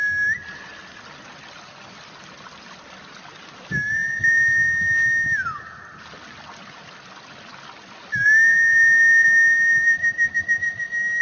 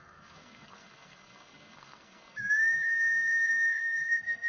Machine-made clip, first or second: second